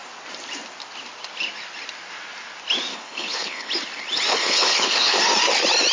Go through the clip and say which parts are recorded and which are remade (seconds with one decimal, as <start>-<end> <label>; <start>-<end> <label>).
0.0-2.9 recorded; 2.9-3.7 remade; 3.7-4.3 recorded; 4.3-5.2 remade; 5.2-5.9 recorded